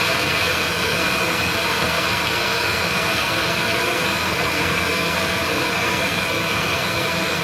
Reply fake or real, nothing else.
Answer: fake